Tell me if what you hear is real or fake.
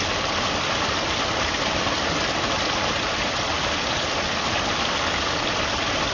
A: real